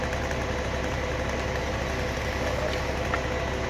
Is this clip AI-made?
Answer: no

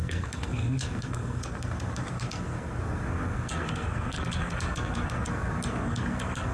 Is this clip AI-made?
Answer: yes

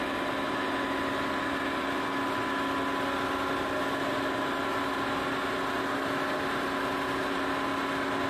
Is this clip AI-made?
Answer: no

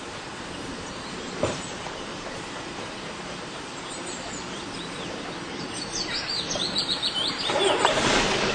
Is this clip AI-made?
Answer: yes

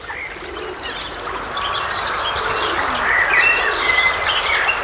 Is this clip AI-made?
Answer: no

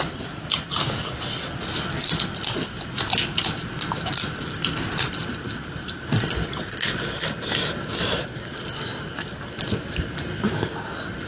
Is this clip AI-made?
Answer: no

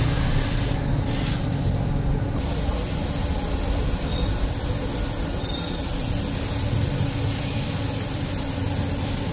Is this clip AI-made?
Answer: no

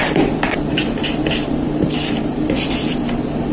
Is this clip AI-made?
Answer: yes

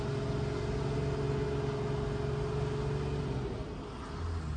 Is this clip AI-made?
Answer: no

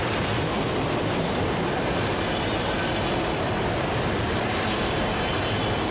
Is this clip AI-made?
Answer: no